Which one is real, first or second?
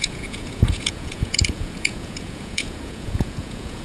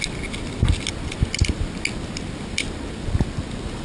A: second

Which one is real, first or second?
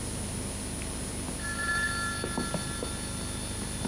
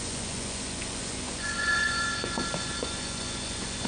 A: first